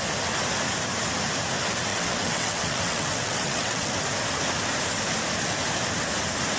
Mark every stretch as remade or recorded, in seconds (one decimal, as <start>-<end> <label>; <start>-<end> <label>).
0.0-1.9 recorded; 1.9-3.9 remade; 3.9-6.6 recorded